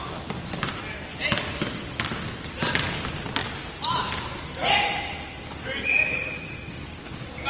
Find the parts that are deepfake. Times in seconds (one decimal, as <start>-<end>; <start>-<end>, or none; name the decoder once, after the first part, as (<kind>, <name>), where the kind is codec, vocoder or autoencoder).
none